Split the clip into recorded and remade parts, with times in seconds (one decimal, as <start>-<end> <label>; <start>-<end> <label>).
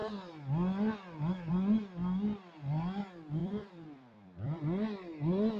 0.0-3.4 recorded; 3.4-4.6 remade; 4.6-5.6 recorded